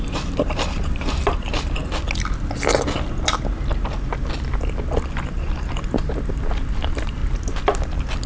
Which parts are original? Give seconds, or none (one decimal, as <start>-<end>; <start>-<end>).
1.8-6.3; 7.2-8.3